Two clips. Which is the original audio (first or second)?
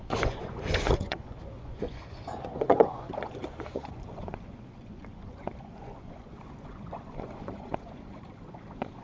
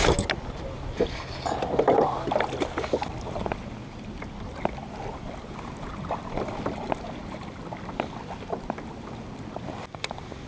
second